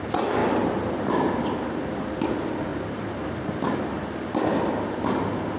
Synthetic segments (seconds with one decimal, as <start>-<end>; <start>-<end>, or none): 0.4-1.3; 2.7-3.5